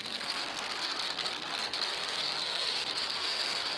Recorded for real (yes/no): no